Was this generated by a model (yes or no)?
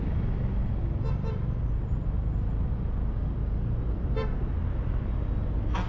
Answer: no